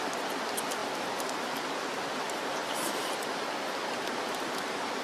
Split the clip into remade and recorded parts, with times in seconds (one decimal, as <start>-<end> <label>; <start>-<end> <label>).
0.0-5.0 recorded